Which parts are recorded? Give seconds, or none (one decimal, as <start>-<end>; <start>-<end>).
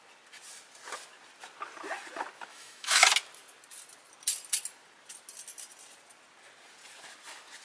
0.0-2.5; 3.0-7.6